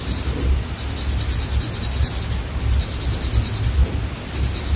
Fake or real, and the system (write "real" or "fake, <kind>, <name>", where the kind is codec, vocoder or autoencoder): real